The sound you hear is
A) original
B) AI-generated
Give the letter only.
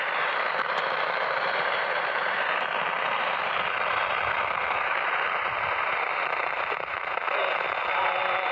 B